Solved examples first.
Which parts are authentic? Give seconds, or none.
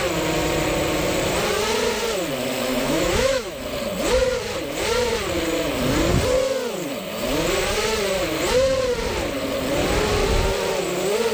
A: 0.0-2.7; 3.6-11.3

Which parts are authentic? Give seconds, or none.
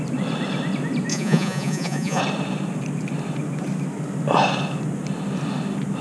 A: 0.0-1.1; 2.2-6.0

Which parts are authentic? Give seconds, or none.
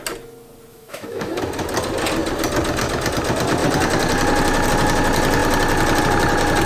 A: 0.0-0.7; 1.4-6.7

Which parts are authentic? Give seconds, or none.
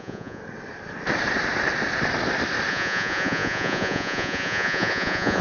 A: 0.4-2.7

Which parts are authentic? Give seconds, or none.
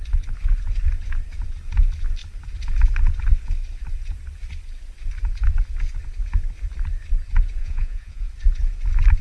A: 0.0-7.6; 8.3-9.2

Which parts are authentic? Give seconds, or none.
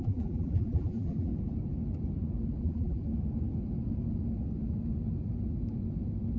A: 1.3-2.6; 3.1-6.4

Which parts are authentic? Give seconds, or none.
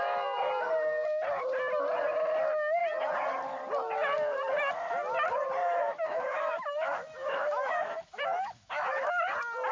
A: 0.0-5.6; 9.1-9.7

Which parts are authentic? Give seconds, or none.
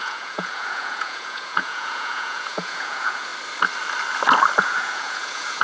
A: 3.3-4.6